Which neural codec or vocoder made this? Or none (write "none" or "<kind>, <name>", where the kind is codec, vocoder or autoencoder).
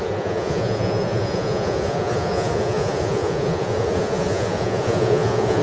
vocoder, Vocos